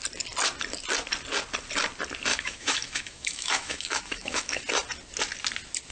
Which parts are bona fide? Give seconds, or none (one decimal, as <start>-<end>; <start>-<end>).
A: 0.0-2.3; 4.6-5.9